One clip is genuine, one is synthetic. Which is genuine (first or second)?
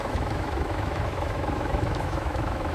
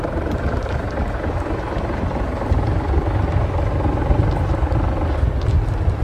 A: second